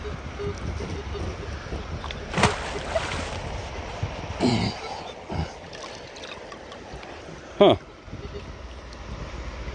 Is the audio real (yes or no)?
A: yes